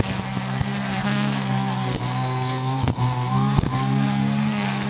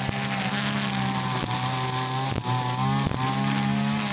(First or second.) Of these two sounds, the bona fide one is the second